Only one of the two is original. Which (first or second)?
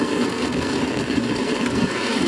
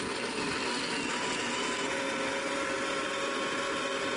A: second